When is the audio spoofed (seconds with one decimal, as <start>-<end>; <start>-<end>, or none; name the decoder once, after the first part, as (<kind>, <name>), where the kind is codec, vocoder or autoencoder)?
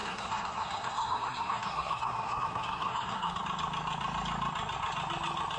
0.0-3.4 (codec, SNAC)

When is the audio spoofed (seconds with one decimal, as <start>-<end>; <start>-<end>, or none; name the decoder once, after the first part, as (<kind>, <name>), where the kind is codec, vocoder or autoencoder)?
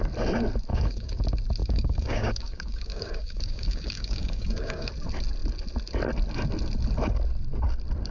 0.7-1.2 (codec, DAC); 1.6-4.9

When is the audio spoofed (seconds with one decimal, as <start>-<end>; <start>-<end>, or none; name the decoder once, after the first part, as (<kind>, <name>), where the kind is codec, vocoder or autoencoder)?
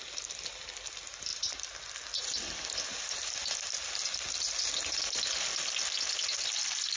none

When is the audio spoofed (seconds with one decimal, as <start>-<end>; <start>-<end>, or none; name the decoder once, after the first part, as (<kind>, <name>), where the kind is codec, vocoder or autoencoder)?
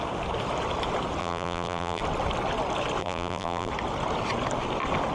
1.2-2.0 (vocoder, BigVGAN v2); 3.0-3.7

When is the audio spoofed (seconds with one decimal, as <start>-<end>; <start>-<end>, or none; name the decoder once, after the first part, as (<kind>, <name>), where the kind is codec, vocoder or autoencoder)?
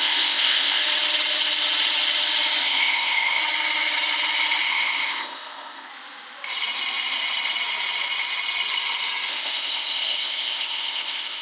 0.0-0.8 (codec, ZipCodec); 2.6-3.4; 4.6-5.9; 9.3-11.4